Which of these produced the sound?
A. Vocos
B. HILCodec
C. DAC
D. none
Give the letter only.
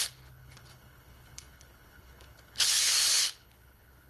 B